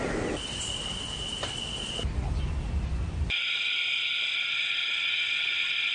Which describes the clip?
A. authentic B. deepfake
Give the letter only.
A